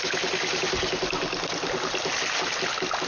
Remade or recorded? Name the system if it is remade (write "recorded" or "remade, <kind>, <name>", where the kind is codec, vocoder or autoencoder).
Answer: recorded